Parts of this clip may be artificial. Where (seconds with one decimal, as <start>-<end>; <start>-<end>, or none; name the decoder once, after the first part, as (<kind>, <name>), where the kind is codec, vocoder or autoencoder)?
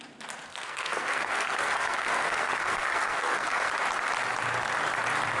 0.5-3.7 (codec, SNAC)